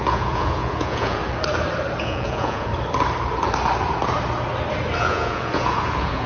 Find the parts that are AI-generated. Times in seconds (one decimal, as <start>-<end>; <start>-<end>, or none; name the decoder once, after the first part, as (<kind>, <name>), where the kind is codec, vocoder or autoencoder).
0.0-1.2 (vocoder, Vocos); 2.0-2.7; 5.0-6.3